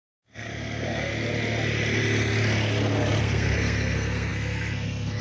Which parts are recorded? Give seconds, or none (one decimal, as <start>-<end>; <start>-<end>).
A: 1.1-3.2